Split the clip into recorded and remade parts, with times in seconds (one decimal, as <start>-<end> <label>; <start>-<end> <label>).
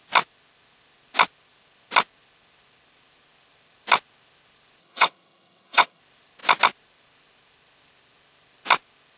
0.0-4.8 recorded; 4.8-6.0 remade; 6.0-9.2 recorded